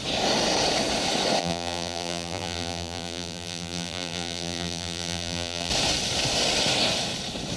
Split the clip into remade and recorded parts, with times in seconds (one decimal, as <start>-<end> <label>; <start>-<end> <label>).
0.0-1.4 recorded; 1.4-5.7 remade; 5.7-7.6 recorded